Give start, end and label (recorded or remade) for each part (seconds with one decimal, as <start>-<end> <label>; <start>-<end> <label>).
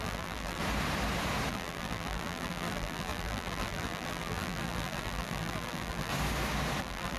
0.0-0.6 remade; 0.6-1.5 recorded; 1.5-6.1 remade; 6.1-6.8 recorded; 6.8-7.2 remade